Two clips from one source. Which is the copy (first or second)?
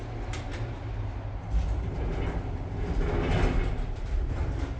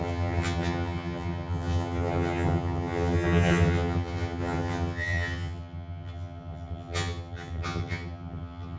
second